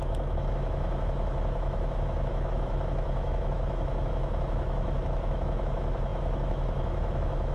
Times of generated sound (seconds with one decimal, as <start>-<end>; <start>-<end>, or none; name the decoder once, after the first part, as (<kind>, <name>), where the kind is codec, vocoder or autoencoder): 0.0-7.5 (autoencoder, DAC-VAE)